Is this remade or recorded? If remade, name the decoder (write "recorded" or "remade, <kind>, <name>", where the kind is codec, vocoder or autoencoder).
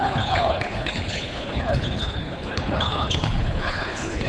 remade, codec, HILCodec